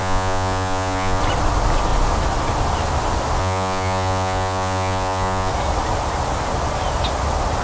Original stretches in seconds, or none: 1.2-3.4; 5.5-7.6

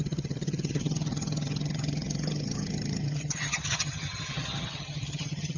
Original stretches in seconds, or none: none

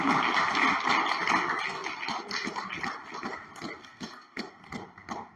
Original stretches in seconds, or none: 0.0-3.8; 4.6-5.4

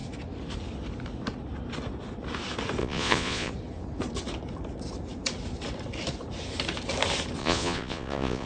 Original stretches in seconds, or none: 0.0-2.8; 3.5-7.4

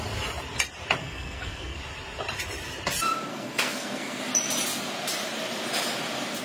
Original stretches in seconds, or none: 0.0-1.0; 1.8-3.3; 4.2-6.4

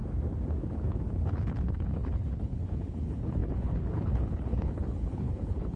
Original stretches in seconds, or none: 0.0-0.7

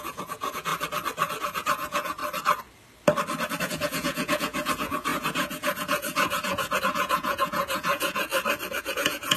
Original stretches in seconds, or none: 0.7-1.4; 2.2-3.6; 8.3-8.8

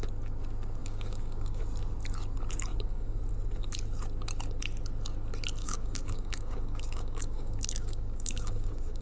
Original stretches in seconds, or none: 0.0-0.8; 1.6-2.7; 3.2-5.6